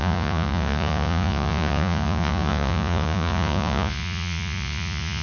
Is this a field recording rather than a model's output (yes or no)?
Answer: no